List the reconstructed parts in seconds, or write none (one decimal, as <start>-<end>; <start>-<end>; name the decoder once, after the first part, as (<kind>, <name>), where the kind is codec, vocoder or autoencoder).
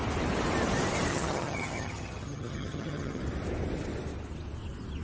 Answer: 1.1-3.2 (vocoder, HiFi-GAN)